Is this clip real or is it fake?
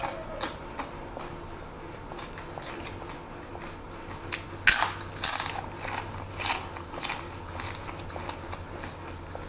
real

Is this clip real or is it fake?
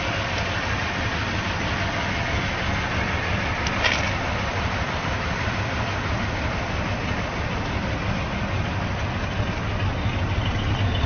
real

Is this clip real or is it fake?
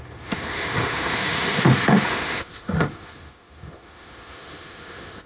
fake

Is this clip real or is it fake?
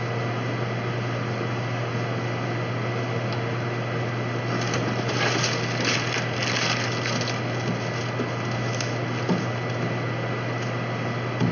real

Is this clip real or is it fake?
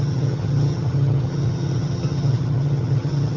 fake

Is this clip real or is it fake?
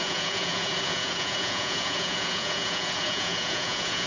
fake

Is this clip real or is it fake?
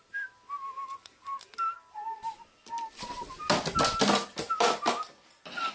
real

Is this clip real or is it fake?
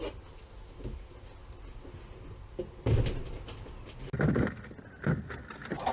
real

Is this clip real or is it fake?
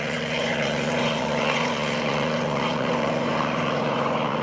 fake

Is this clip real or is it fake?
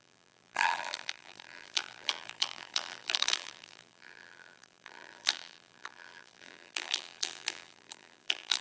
fake